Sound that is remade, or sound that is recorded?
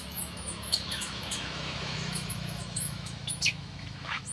remade